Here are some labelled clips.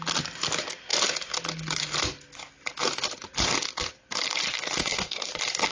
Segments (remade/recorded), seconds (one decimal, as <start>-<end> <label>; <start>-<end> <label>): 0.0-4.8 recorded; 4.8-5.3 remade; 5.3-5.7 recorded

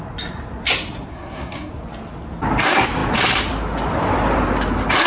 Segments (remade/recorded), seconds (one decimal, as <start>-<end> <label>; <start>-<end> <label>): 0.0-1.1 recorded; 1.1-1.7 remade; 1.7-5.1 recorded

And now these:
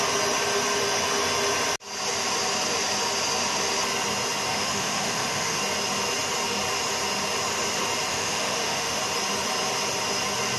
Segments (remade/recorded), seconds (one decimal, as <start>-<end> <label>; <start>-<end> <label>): 0.0-4.5 recorded; 4.5-5.6 remade; 5.6-8.1 recorded; 8.1-9.0 remade; 9.0-10.6 recorded